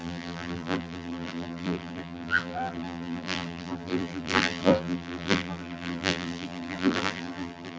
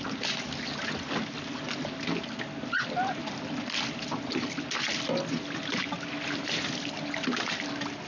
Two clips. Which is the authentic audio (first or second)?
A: second